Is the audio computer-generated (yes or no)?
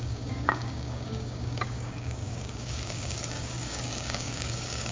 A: yes